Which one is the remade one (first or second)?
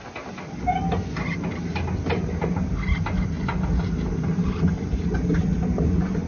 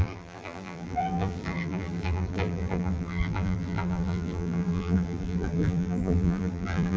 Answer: second